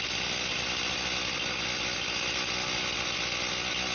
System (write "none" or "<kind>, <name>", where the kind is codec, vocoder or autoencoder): none